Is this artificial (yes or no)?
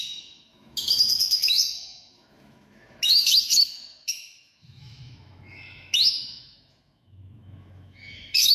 yes